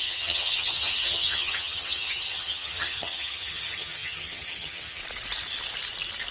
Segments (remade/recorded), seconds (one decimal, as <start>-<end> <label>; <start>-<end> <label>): 0.0-5.0 remade; 5.0-6.3 recorded